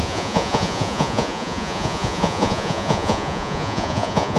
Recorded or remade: remade